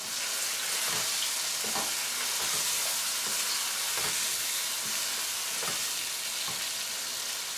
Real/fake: real